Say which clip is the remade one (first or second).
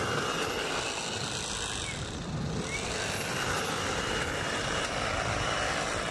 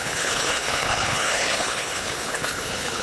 second